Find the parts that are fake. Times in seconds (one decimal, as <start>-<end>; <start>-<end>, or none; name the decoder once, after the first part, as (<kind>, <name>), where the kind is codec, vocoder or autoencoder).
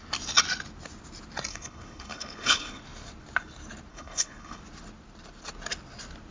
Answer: 1.5-2.8 (codec, HILCodec); 3.9-4.6